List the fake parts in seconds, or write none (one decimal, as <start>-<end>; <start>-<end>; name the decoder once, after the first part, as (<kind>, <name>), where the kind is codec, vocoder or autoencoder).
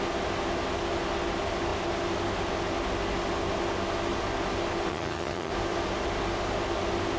4.9-5.5 (vocoder, HiFi-GAN)